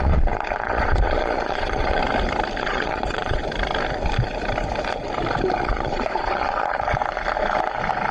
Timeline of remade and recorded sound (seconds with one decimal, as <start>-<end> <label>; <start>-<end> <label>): 0.0-2.0 remade; 2.0-2.6 recorded; 2.6-3.4 remade; 3.4-5.6 recorded; 5.6-7.0 remade; 7.0-8.1 recorded